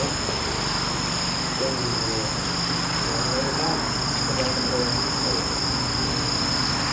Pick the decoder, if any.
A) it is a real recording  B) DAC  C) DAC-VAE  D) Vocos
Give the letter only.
A